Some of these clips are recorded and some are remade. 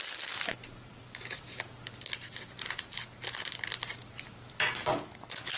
recorded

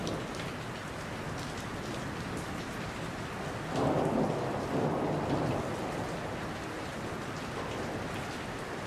recorded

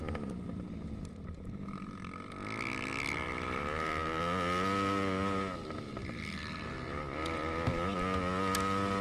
recorded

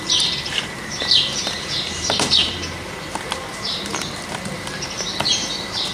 remade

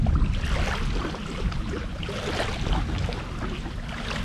recorded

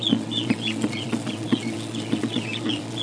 remade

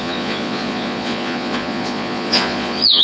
remade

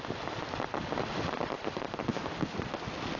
recorded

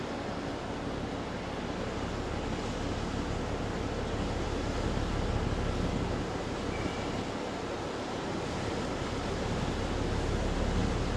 recorded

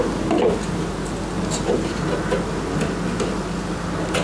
recorded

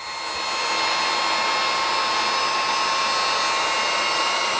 recorded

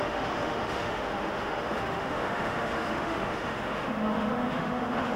remade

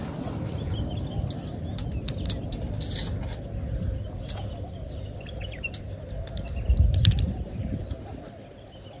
recorded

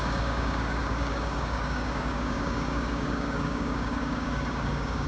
remade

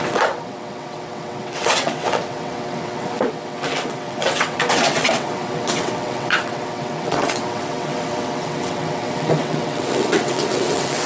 remade